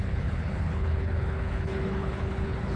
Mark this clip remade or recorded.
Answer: remade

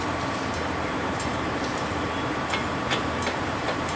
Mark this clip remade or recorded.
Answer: remade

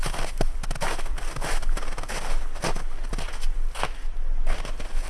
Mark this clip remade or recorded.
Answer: recorded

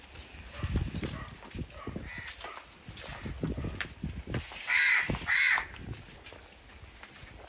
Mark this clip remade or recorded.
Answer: recorded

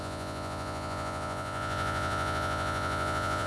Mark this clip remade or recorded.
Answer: remade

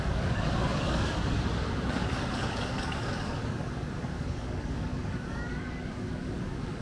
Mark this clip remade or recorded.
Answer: remade